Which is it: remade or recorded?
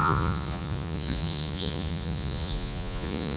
remade